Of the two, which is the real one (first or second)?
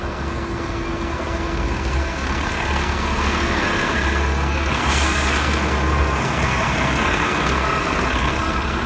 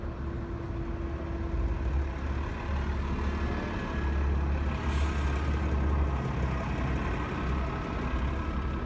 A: second